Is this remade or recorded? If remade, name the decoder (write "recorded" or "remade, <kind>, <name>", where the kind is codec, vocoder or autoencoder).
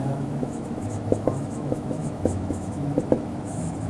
remade, autoencoder, DAC-VAE